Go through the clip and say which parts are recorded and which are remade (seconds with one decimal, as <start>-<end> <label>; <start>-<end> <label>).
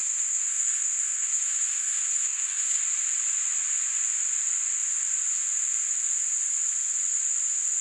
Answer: 0.0-2.8 remade; 2.8-7.8 recorded